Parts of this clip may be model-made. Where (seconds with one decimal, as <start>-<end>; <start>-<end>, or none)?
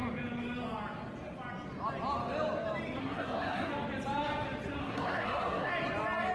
3.0-3.7; 4.8-5.7